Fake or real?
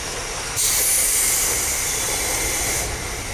real